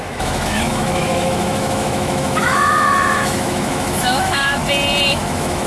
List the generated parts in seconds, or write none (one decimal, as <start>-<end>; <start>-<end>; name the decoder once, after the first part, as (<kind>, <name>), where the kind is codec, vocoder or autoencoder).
0.0-4.6 (autoencoder, DAC-VAE); 5.1-5.7

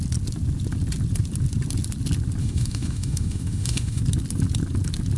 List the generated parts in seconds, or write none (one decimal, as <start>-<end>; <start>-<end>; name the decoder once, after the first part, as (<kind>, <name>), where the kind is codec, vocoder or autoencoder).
2.4-4.0 (autoencoder, DAC-VAE)

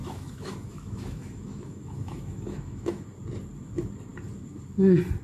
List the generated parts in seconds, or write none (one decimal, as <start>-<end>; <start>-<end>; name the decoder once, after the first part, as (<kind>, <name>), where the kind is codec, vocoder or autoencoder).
0.0-3.1 (autoencoder, DAC-VAE)

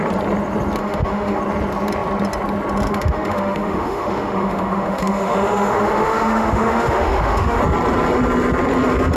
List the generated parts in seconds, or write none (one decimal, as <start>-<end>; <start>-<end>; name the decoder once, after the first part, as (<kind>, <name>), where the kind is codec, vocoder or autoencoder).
0.8-1.4 (autoencoder, DAC-VAE); 2.9-7.6

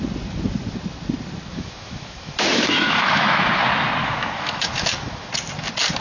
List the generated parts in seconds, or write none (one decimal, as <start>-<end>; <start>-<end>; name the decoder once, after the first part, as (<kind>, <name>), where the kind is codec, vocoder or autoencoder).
1.5-3.5 (autoencoder, DAC-VAE); 4.0-5.3